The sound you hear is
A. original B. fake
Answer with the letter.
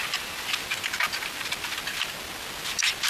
A